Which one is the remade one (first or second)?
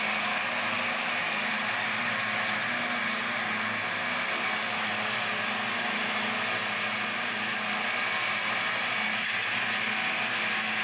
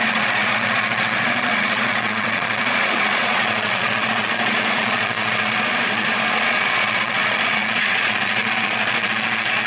second